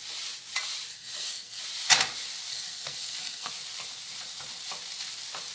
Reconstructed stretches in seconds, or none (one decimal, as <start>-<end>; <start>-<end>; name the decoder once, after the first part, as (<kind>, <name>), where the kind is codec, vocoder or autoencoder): 0.9-1.6 (codec, SNAC); 2.5-3.5